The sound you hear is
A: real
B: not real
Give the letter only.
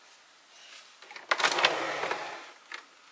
A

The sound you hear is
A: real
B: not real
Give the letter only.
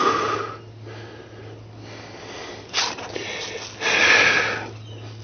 A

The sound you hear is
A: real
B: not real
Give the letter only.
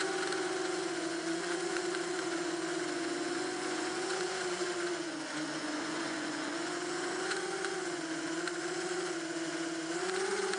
B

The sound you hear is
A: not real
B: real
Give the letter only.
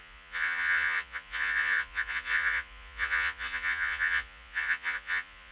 A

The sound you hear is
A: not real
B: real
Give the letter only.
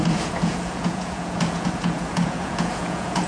A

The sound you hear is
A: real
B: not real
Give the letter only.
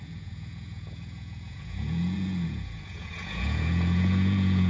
B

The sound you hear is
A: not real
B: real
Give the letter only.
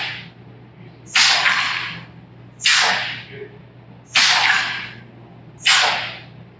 B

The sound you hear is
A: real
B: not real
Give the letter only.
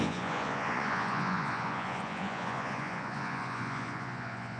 B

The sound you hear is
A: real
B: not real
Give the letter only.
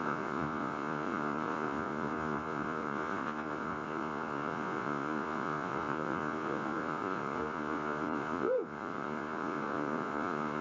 B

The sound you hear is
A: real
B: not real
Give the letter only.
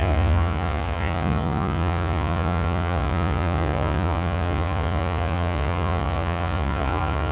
B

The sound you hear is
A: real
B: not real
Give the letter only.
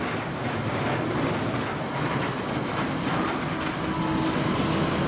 A